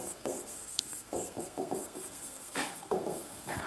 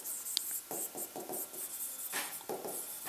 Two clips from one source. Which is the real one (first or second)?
second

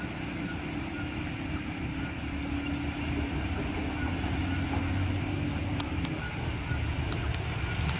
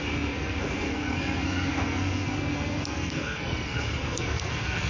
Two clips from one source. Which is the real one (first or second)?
first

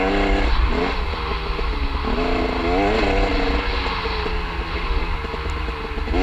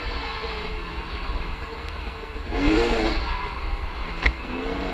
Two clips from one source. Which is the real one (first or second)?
first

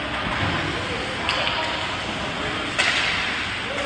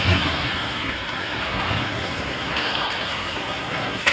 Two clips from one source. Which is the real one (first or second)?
first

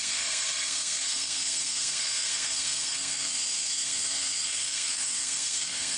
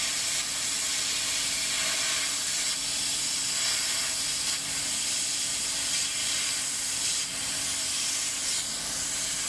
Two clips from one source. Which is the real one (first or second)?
second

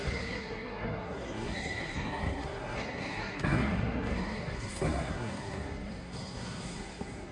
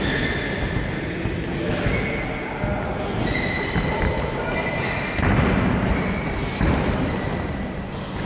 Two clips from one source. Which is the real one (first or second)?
second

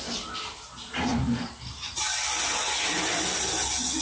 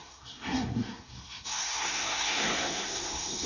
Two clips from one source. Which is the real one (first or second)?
first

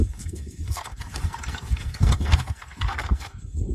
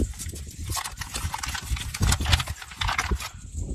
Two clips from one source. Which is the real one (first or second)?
second